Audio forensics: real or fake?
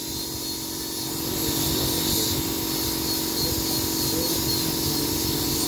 real